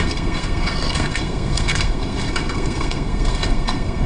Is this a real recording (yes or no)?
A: no